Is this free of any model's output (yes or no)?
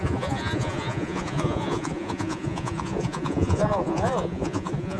no